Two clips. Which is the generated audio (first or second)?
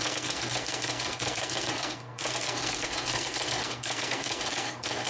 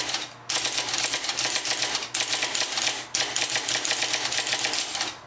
first